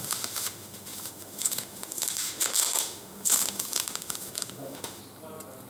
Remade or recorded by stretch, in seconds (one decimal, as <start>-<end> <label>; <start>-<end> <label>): 0.0-5.0 remade; 5.0-5.7 recorded

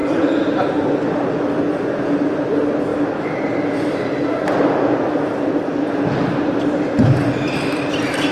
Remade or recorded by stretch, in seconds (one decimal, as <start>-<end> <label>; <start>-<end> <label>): 0.0-8.3 recorded

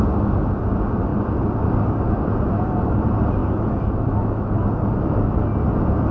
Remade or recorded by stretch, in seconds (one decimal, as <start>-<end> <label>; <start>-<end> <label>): 0.0-3.4 recorded; 3.4-4.9 remade; 4.9-6.1 recorded

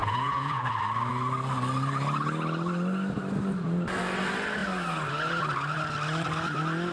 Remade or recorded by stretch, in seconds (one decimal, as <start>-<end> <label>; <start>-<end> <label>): 0.0-0.7 remade; 0.7-6.9 recorded

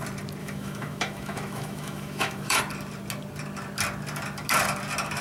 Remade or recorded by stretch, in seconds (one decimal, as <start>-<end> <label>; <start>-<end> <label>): 0.0-0.4 recorded; 0.4-2.6 remade; 2.6-5.2 recorded